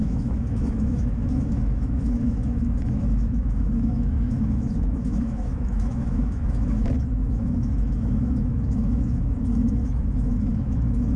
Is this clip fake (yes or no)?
yes